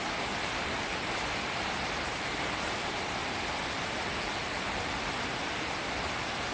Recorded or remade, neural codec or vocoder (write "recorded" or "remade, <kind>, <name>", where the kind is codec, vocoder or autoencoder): remade, vocoder, BigVGAN v2